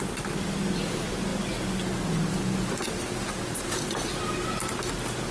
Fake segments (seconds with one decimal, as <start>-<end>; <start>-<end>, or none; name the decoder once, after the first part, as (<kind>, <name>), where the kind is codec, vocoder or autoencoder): none